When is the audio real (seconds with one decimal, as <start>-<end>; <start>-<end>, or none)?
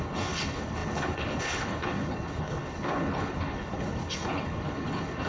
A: none